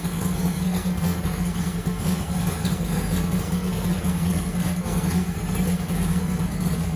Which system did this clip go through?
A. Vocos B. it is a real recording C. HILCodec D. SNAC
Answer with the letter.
D